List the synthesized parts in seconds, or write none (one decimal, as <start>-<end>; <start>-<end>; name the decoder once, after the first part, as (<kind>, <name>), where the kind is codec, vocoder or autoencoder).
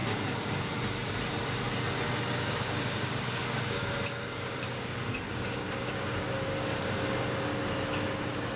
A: 2.2-7.5 (codec, DAC)